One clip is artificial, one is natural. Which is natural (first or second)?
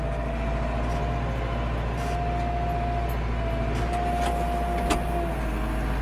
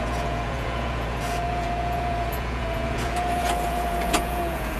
first